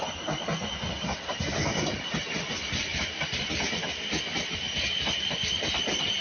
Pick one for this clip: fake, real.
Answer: real